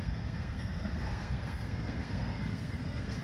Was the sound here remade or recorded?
remade